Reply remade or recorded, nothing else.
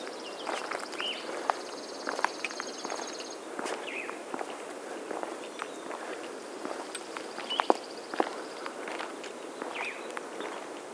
recorded